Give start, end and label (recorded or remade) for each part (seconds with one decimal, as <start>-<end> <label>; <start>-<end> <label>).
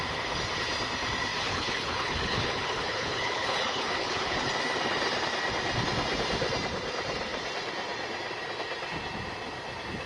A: 0.0-1.3 recorded; 1.3-4.5 remade; 4.5-10.1 recorded